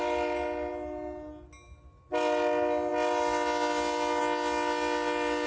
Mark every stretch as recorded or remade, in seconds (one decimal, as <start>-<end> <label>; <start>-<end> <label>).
0.0-5.5 recorded